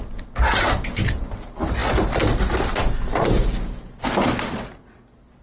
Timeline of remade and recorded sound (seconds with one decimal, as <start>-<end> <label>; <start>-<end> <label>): 0.0-5.4 recorded